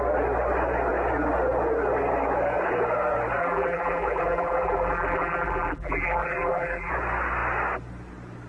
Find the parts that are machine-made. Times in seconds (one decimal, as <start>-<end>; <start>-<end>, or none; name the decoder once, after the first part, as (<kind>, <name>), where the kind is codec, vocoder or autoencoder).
3.4-6.9 (vocoder, BigVGAN v2)